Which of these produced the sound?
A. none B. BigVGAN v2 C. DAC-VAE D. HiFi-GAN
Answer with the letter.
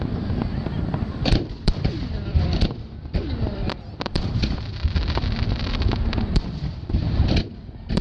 B